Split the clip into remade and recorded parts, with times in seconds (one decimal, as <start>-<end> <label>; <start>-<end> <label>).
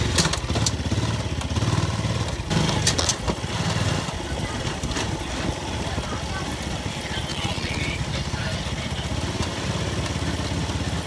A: 0.0-7.3 recorded; 7.3-7.8 remade; 7.8-11.1 recorded